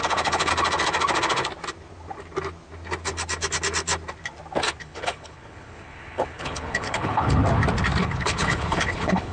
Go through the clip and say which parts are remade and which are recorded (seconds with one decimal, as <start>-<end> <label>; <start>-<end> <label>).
0.0-0.5 remade; 0.5-4.8 recorded; 4.8-7.4 remade; 7.4-8.0 recorded; 8.0-9.3 remade